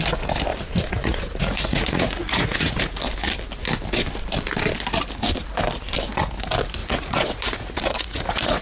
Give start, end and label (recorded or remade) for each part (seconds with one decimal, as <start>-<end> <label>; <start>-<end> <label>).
0.0-0.5 recorded; 0.5-3.0 remade; 3.0-6.8 recorded; 6.8-8.6 remade